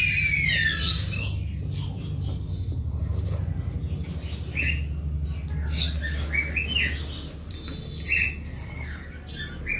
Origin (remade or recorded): recorded